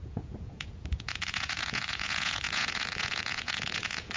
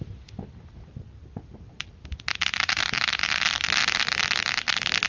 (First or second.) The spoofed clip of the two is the first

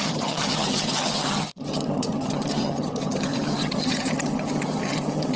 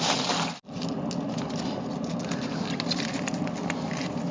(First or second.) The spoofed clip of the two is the first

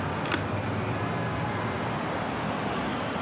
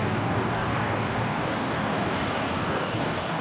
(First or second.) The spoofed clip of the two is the second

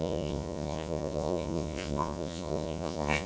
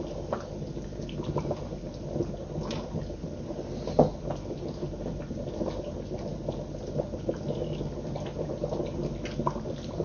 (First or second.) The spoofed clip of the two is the first